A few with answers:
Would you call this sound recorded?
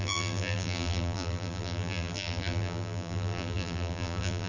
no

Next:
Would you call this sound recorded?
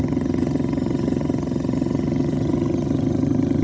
no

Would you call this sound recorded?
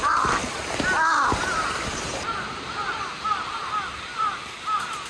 yes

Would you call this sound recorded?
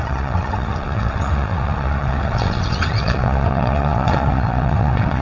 no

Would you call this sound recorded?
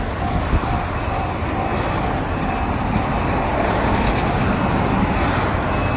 yes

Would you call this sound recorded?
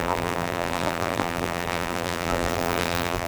no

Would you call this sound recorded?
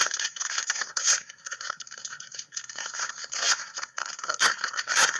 no